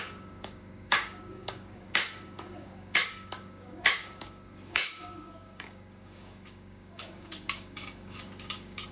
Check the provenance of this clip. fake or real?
fake